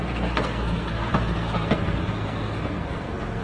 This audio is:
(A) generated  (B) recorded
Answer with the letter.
A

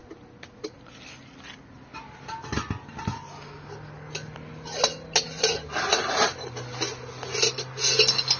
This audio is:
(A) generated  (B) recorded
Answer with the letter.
B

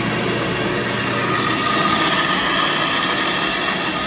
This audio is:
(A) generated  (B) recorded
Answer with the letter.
B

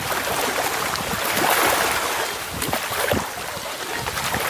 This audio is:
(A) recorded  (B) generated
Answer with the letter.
A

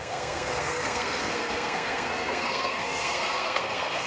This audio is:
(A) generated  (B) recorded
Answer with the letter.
A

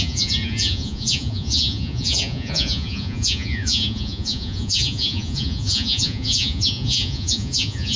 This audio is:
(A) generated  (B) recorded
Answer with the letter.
A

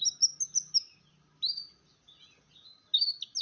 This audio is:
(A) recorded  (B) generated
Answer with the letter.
A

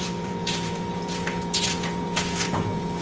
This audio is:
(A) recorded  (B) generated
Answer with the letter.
B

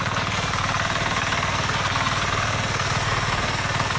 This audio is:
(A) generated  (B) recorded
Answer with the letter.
A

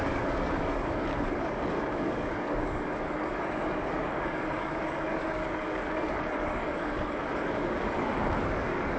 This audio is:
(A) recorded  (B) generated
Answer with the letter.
B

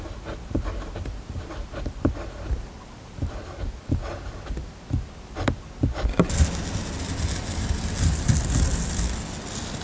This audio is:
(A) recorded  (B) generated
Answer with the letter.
A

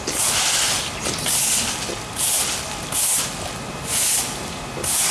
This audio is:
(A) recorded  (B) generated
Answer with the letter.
A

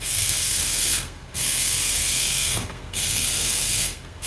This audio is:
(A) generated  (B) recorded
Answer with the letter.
A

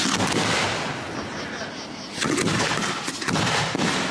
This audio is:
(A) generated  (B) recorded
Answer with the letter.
B